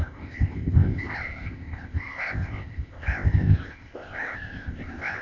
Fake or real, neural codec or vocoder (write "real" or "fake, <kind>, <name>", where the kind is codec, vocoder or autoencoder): fake, codec, ZipCodec